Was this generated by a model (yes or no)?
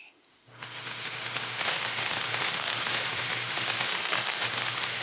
yes